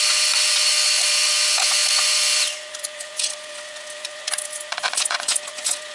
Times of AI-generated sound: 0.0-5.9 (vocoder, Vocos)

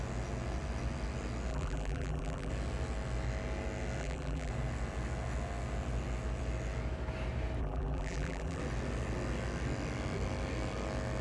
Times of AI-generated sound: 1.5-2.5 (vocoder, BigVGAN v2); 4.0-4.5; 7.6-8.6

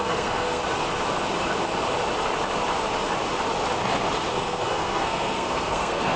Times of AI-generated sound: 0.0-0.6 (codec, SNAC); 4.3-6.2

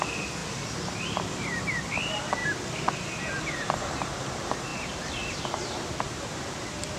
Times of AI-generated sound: 4.7-7.0 (vocoder, BigVGAN v2)

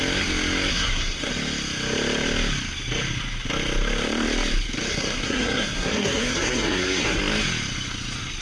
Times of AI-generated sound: 0.7-1.3 (codec, SNAC); 4.9-7.2

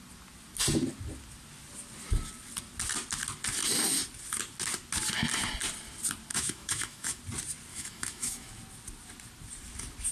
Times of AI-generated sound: 6.3-7.2 (autoencoder, DAC-VAE); 7.7-8.5

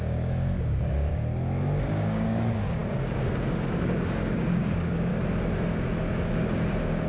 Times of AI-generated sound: 0.0-1.1 (codec, DAC); 1.8-5.1; 6.0-7.1

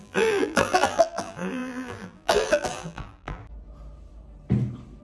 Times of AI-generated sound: 0.0-3.4 (vocoder, BigVGAN v2)